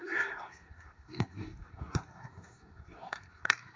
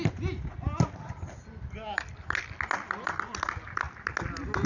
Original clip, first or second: second